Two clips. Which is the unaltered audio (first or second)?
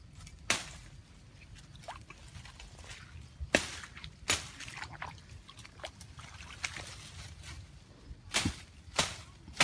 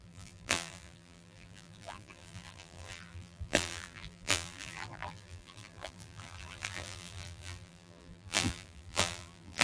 first